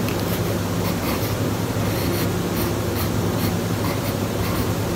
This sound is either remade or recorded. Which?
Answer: recorded